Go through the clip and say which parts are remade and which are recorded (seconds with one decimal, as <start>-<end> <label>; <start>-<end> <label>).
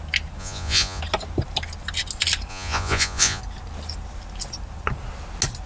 0.0-0.4 recorded; 0.4-1.0 remade; 1.0-2.5 recorded; 2.5-3.4 remade; 3.4-5.7 recorded